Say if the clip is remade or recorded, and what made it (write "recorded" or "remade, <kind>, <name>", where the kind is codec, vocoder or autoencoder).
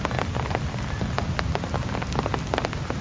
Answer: recorded